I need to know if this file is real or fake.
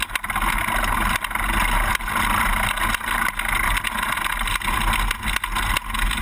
real